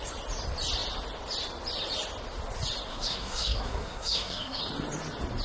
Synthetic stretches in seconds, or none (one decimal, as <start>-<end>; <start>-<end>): 2.9-4.6